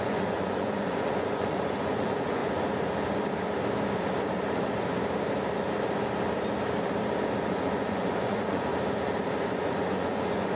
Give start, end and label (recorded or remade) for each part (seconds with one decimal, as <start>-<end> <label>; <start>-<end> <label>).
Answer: 0.0-2.4 remade; 2.4-7.5 recorded; 7.5-8.7 remade; 8.7-9.4 recorded; 9.4-10.6 remade